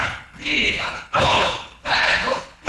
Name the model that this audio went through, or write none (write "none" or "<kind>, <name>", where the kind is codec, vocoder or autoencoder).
codec, HILCodec